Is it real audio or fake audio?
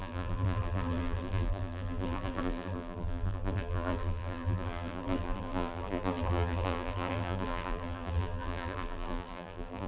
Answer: fake